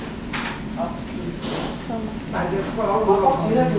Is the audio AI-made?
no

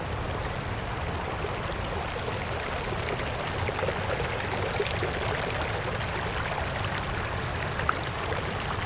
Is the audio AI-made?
no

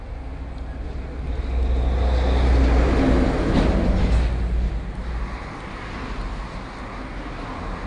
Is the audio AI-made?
no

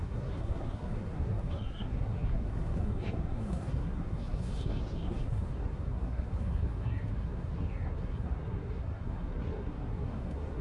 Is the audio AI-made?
yes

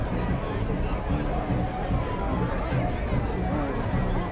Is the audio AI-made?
no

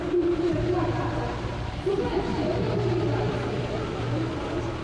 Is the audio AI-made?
yes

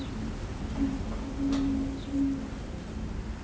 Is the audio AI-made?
no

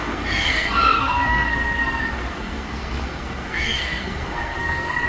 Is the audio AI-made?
yes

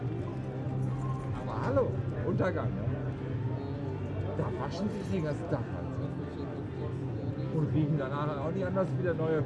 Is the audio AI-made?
no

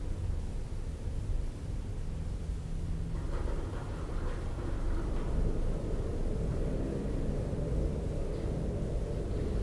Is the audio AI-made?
no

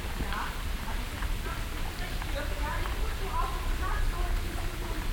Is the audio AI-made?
no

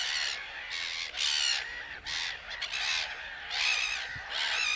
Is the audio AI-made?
no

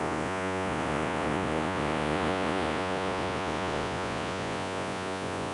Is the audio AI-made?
yes